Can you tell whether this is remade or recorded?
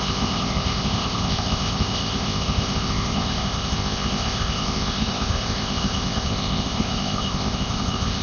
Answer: remade